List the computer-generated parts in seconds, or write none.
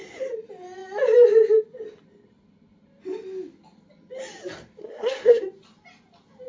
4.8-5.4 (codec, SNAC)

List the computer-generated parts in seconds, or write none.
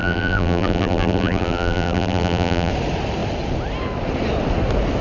0.0-2.7 (vocoder, BigVGAN v2)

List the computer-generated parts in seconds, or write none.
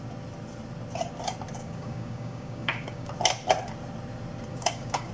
1.6-3.1 (codec, DAC); 4.5-5.1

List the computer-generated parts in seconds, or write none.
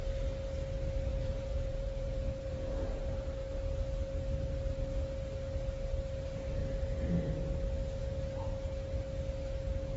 1.1-3.0 (vocoder, Vocos)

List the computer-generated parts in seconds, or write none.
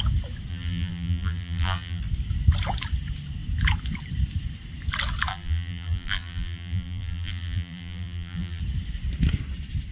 0.5-2.0 (vocoder, BigVGAN v2); 5.3-8.6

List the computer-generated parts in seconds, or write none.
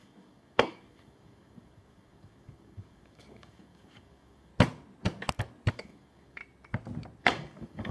0.0-4.5 (codec, DAC); 5.7-6.4; 7.2-7.9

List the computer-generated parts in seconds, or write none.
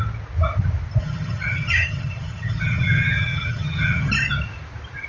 1.0-4.1 (vocoder, HiFi-GAN)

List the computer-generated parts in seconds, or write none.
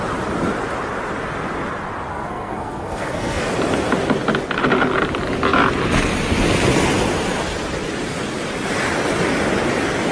2.1-3.5 (codec, SNAC)